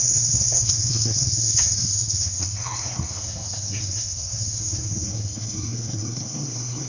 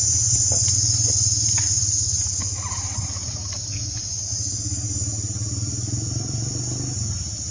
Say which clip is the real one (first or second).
second